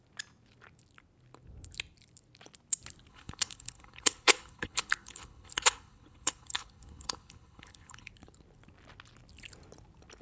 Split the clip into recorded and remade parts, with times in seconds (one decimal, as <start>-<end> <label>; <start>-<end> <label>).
0.0-3.1 recorded; 3.1-8.1 remade; 8.1-10.2 recorded